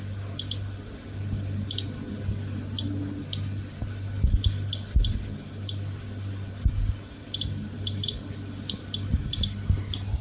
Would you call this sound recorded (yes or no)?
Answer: yes